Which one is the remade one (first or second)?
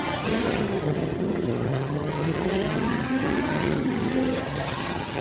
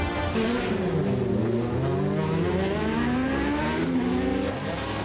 first